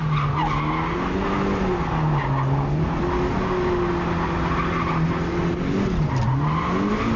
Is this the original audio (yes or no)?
yes